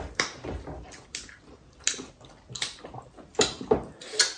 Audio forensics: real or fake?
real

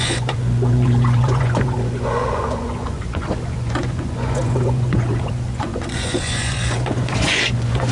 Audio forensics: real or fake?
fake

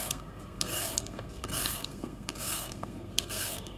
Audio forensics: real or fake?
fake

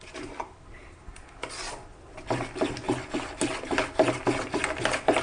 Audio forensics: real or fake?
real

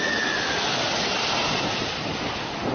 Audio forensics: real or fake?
real